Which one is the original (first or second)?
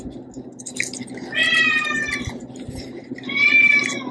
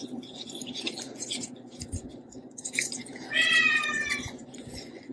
first